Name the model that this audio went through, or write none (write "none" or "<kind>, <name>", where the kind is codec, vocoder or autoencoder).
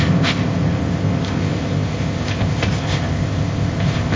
codec, ZipCodec